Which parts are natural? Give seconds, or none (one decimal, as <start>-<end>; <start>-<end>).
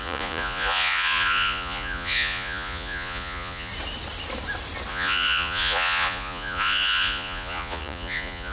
3.7-4.9